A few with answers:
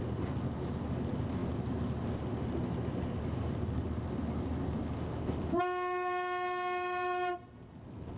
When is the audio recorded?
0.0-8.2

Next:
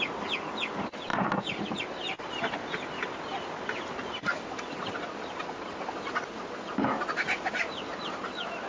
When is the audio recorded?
0.0-8.7